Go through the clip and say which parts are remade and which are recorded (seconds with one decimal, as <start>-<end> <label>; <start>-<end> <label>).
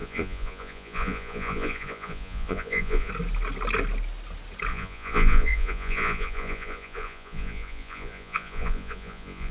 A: 0.0-3.1 remade; 3.1-4.7 recorded; 4.7-9.5 remade